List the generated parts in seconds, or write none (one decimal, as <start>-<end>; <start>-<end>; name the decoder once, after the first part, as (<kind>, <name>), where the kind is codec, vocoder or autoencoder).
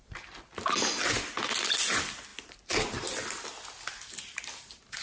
none